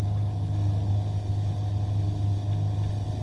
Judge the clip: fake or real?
real